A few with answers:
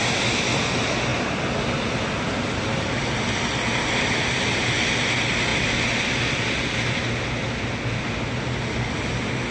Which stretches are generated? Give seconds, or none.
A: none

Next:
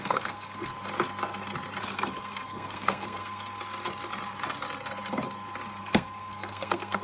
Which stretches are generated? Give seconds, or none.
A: 0.0-0.7 (codec, SNAC); 1.8-3.4; 5.8-7.0

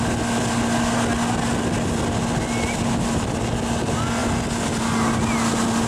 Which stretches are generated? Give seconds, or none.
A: none

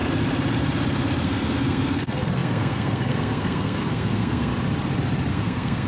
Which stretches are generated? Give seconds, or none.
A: 1.2-4.5 (codec, SNAC); 5.3-5.9

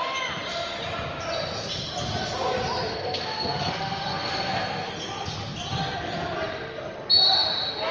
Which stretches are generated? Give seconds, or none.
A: 2.9-4.9 (codec, SNAC)

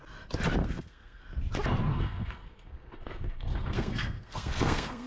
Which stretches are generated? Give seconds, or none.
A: 0.6-1.2 (codec, SNAC); 1.9-5.1

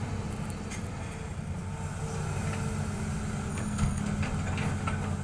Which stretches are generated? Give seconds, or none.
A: 3.5-4.0 (codec, SNAC)

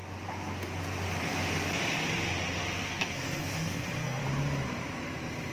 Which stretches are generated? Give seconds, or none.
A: 2.6-4.2 (codec, SNAC)